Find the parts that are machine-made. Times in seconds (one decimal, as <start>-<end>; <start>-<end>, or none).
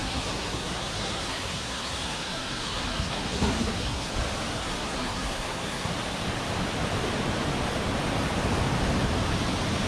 0.0-4.1; 4.6-5.9